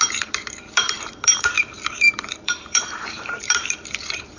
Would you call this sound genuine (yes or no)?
no